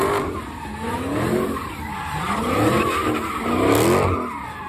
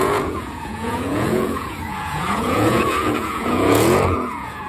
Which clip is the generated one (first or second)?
second